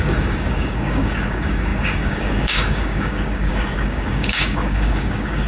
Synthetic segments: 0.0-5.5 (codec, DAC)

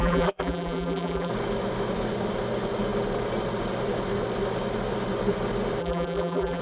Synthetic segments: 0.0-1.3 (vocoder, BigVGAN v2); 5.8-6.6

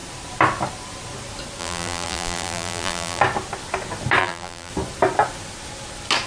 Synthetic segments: 1.6-3.2 (vocoder, BigVGAN v2); 4.2-4.7

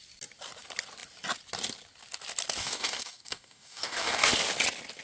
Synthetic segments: 2.6-4.3 (codec, DAC)

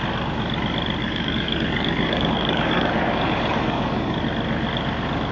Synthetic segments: 1.0-4.2 (codec, DAC)

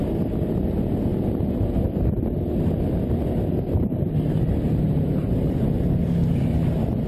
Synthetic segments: none

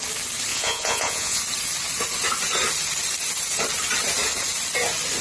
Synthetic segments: 0.5-1.4 (vocoder, Vocos)